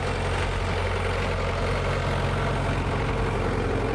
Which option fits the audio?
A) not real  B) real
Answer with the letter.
B